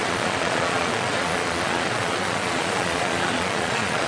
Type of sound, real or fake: fake